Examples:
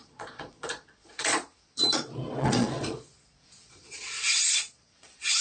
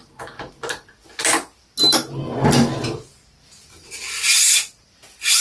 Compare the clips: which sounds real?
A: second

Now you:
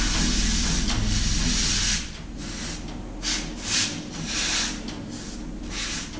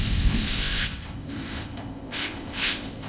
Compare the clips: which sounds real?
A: first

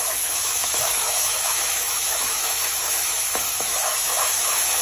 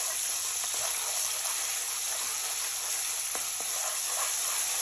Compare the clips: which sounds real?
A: second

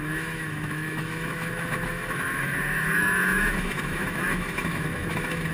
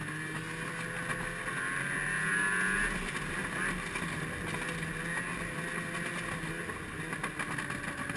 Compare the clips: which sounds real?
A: second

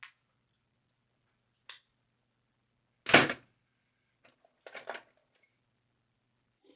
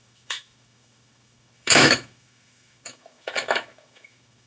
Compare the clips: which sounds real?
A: first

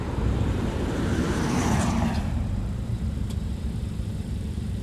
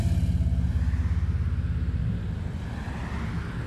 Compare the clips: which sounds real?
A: second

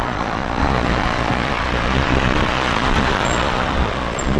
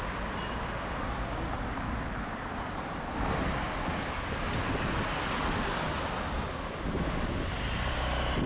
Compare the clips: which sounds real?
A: second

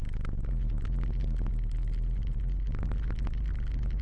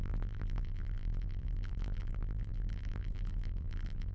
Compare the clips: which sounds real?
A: first